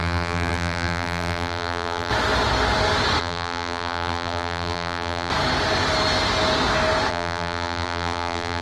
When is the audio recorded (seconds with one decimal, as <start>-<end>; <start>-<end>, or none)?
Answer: 2.1-3.2; 5.3-7.1